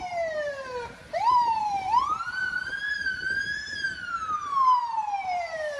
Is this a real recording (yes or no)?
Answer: no